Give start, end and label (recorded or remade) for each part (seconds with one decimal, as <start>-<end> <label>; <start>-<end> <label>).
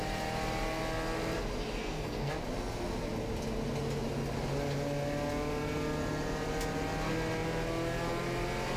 0.0-1.8 recorded; 1.8-2.3 remade; 2.3-8.8 recorded